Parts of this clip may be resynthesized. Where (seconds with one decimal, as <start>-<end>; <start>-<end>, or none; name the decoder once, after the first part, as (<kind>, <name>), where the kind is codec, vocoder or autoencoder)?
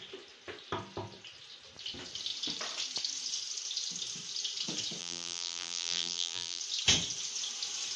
5.0-6.6 (vocoder, BigVGAN v2)